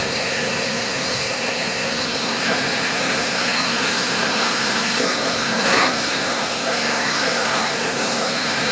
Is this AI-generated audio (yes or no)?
yes